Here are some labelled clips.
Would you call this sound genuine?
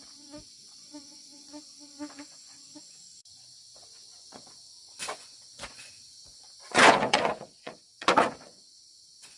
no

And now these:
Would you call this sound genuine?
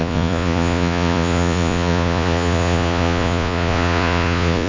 no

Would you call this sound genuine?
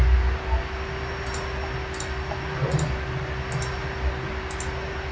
yes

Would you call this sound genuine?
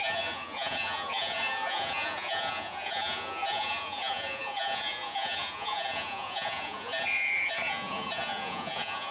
no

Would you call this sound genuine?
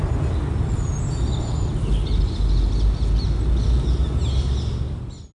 yes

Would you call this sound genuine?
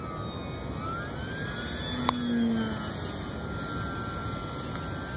yes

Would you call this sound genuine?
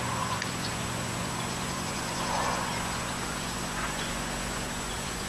no